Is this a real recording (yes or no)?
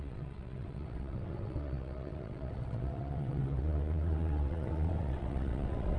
no